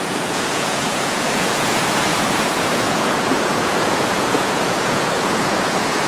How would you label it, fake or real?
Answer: fake